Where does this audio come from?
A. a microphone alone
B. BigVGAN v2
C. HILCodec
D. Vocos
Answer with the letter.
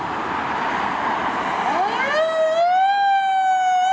A